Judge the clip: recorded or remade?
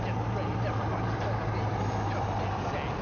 recorded